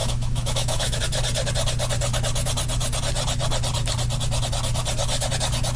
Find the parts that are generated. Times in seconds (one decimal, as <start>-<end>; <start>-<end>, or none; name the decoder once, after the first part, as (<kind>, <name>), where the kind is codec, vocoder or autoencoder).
0.0-1.0 (autoencoder, DAC-VAE)